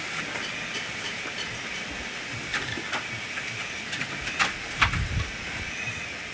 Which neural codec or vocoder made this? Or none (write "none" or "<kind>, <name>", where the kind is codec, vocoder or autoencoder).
none